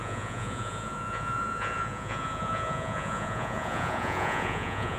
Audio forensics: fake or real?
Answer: fake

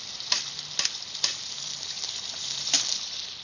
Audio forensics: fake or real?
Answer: real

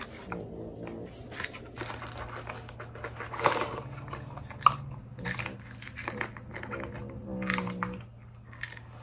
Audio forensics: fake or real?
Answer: real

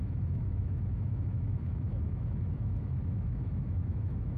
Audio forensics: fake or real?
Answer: fake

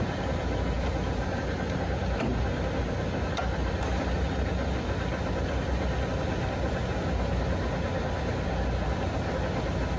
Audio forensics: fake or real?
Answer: real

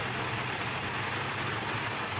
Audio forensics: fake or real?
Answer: real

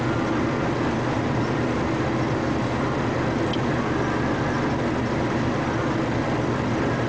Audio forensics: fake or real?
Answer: real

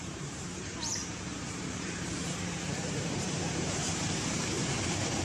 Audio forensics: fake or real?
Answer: fake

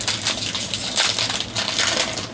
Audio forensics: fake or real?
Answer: real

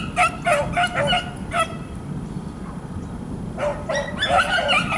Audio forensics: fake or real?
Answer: real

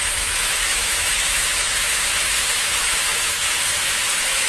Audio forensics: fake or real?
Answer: fake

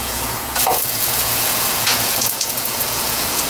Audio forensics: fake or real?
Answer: fake